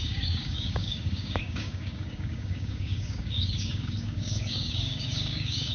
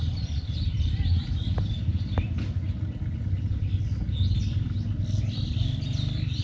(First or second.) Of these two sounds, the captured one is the second